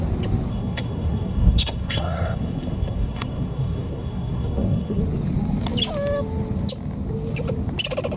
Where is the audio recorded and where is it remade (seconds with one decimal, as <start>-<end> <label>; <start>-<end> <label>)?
0.0-0.5 recorded; 0.5-5.0 remade; 5.0-8.2 recorded